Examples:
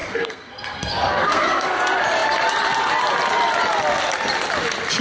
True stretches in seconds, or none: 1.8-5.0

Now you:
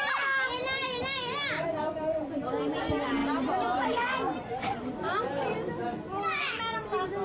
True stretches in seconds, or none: 0.0-7.2